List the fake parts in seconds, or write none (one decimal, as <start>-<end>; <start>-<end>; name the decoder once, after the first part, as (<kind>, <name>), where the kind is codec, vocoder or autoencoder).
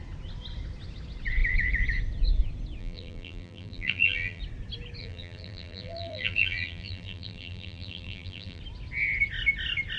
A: 2.8-4.4 (vocoder, BigVGAN v2); 5.0-8.6